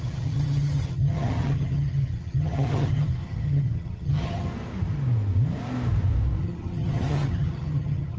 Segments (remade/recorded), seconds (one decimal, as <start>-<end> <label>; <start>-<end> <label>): 0.0-4.5 remade; 4.5-6.4 recorded; 6.4-8.2 remade